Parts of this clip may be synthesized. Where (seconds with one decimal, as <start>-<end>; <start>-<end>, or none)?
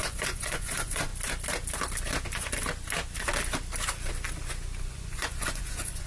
0.0-1.1; 4.8-6.1